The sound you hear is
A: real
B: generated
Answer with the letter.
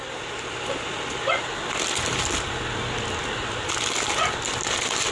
A